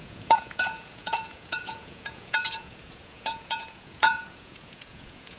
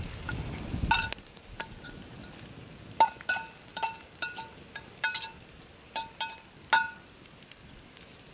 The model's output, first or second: first